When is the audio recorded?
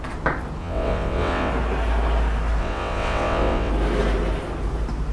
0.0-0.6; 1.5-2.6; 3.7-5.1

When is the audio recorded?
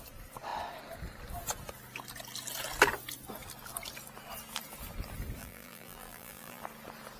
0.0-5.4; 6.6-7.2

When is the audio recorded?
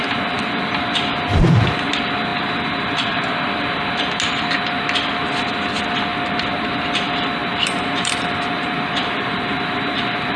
0.0-7.4